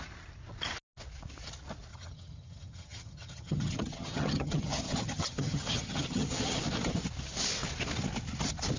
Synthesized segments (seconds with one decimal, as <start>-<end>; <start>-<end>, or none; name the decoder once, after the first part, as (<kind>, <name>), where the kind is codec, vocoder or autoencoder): 1.9-6.6 (vocoder, HiFi-GAN)